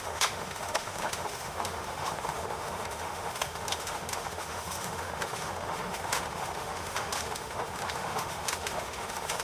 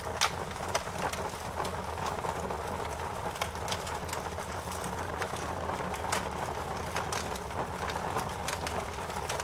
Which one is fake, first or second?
first